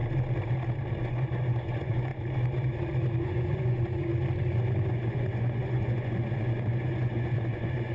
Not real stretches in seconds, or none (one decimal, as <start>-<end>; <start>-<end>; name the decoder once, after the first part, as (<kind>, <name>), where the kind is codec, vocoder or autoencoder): 1.0-2.1 (vocoder, Vocos); 3.2-4.1; 4.9-7.9